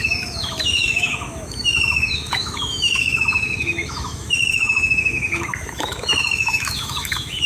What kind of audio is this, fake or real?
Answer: fake